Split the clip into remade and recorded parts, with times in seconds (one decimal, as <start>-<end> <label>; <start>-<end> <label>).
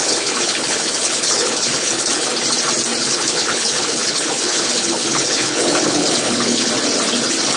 0.0-2.3 remade; 2.3-3.0 recorded; 3.0-6.7 remade; 6.7-7.6 recorded